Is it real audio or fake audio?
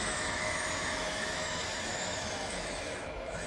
fake